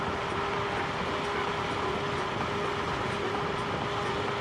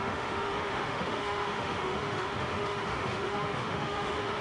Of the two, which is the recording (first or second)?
first